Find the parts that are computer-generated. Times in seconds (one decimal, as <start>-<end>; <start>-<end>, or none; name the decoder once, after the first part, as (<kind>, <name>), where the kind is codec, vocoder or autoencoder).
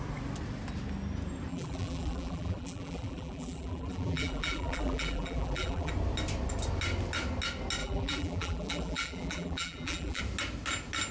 1.5-5.9 (vocoder, BigVGAN v2); 7.8-10.2